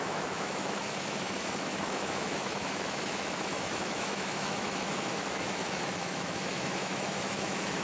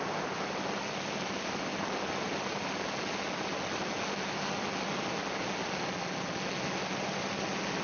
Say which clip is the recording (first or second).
second